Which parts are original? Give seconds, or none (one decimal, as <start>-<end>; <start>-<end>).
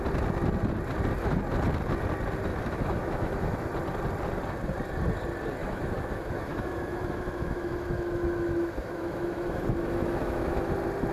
0.0-2.5; 3.7-5.6; 10.7-11.1